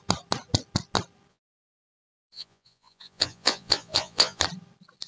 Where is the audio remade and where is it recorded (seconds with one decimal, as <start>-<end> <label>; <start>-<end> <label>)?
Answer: 0.0-1.3 recorded; 1.3-4.4 remade; 4.4-5.1 recorded